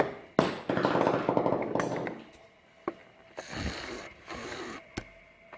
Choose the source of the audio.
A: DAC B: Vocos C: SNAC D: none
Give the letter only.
D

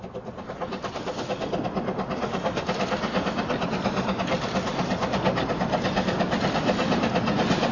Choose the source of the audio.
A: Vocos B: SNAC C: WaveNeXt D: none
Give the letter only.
D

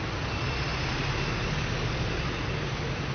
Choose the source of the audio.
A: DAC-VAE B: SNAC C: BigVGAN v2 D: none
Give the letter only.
D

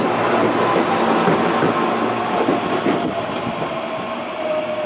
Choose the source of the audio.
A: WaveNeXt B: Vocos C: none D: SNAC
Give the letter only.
C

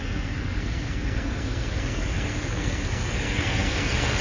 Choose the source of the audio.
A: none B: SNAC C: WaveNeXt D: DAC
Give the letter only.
B